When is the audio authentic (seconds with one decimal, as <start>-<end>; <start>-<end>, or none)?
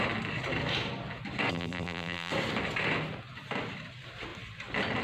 0.0-1.5; 2.3-5.0